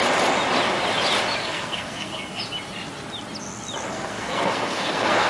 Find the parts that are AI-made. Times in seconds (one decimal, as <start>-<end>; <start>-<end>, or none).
1.4-2.4; 3.9-5.3